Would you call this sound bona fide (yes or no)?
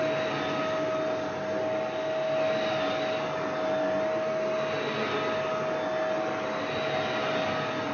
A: yes